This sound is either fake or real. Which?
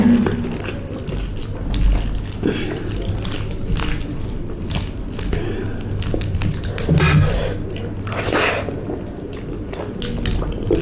real